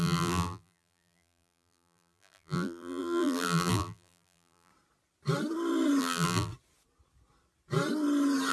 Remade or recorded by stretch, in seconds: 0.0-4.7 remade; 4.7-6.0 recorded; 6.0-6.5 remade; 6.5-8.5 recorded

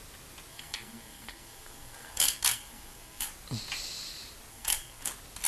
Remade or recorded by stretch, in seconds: 0.0-0.5 recorded; 0.5-3.3 remade; 3.3-4.5 recorded; 4.5-5.1 remade; 5.1-5.5 recorded

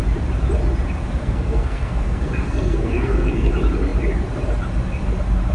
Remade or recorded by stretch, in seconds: 0.0-1.2 recorded; 1.2-3.5 remade; 3.5-5.5 recorded